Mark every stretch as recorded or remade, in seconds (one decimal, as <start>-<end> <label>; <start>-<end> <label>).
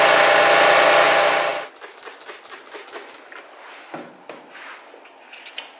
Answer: 0.0-5.8 recorded